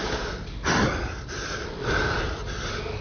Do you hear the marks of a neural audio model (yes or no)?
no